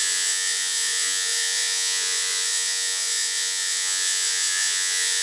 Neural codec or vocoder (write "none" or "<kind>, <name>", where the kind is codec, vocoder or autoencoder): vocoder, Vocos